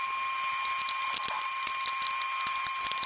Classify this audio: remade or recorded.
recorded